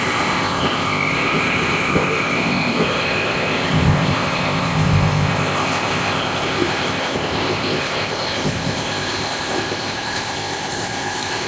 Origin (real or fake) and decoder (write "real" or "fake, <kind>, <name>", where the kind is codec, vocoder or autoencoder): fake, codec, ZipCodec